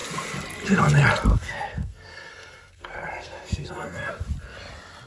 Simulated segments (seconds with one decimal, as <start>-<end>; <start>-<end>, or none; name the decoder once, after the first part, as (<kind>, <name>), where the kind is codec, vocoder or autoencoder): 1.3-4.1 (codec, SNAC)